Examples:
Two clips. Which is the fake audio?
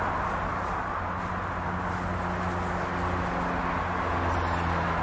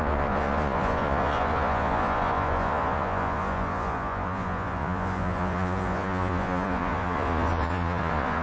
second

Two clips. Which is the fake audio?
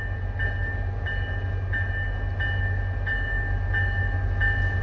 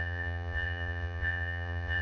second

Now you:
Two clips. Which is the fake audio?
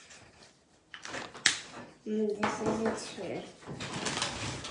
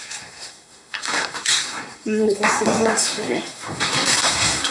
second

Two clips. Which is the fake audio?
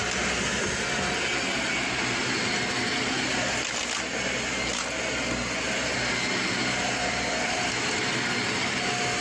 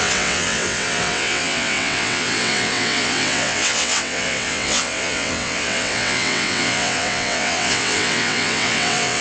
second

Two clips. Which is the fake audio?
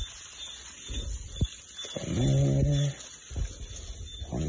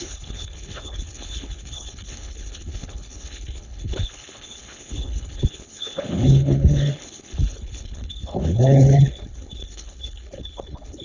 second